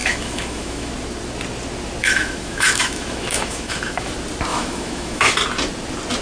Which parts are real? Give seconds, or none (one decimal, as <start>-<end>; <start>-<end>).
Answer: 0.9-2.0; 4.1-4.5; 5.3-6.2